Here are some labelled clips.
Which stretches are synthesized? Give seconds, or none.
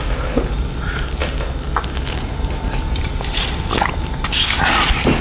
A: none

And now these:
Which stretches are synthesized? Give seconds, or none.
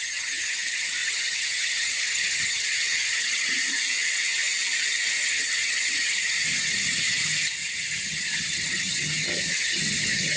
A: 0.0-3.6; 5.1-10.4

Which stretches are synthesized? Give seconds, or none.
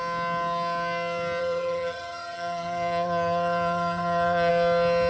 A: 1.4-4.5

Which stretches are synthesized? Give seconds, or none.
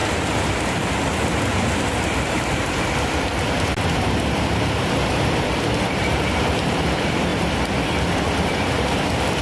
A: 1.4-9.4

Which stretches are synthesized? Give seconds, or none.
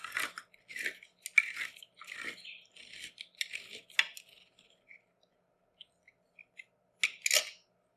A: none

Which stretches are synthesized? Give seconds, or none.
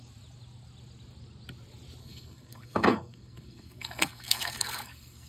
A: 2.0-5.3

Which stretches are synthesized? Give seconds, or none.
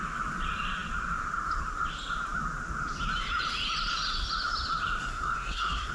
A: 5.0-5.9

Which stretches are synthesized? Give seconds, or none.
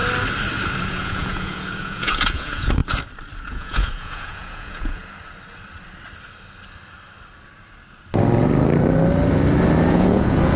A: 0.8-2.8; 3.5-5.0; 9.9-10.6